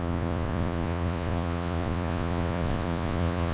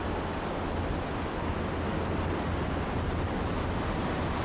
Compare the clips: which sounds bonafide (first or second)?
second